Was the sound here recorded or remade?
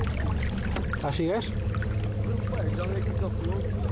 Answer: recorded